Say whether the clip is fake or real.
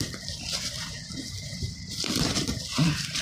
fake